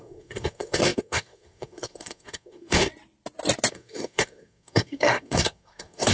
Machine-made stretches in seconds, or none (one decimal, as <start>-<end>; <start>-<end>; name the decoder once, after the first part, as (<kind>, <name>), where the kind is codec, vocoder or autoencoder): 0.0-2.9 (codec, SNAC); 3.7-6.1